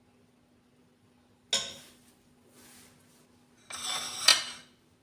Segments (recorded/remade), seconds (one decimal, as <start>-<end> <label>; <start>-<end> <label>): 0.0-5.0 recorded